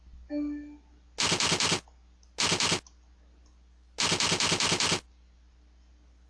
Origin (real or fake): real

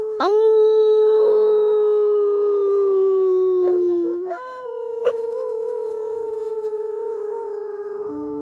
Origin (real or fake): fake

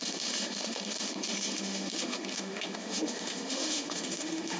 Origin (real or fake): fake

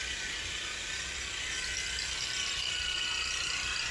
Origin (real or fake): real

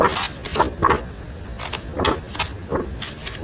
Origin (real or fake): real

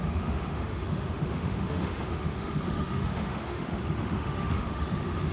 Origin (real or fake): fake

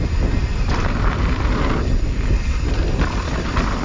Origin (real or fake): real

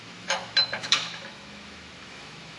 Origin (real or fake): fake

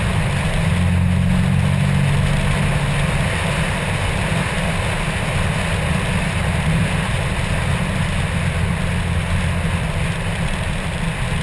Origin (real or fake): real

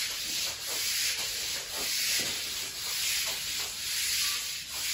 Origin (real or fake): real